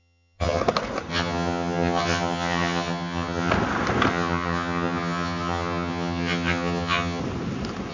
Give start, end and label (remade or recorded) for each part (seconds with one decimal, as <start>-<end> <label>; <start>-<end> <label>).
0.0-0.6 remade; 0.6-1.1 recorded; 1.1-3.5 remade; 3.5-4.1 recorded; 4.1-7.2 remade; 7.2-7.9 recorded